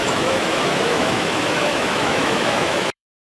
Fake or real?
fake